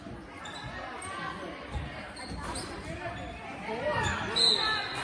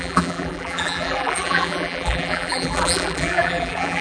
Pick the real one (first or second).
first